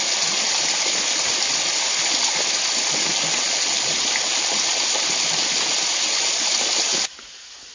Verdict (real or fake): real